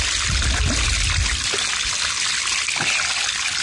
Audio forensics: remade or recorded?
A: recorded